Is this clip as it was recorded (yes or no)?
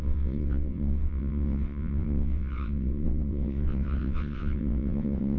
no